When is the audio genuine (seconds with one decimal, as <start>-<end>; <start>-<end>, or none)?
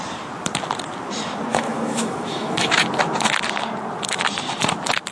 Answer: 0.0-1.5; 2.7-5.1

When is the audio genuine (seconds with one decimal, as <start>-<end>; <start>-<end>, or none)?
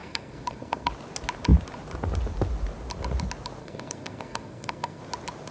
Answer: 0.9-3.6; 5.0-5.5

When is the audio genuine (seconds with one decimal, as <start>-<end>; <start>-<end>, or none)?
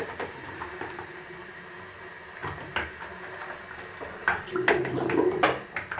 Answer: 0.0-6.0